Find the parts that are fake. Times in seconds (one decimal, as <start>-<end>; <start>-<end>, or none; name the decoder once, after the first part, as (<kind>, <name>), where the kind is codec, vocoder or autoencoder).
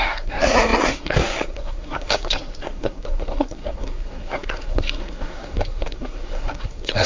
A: 0.0-7.1 (codec, SNAC)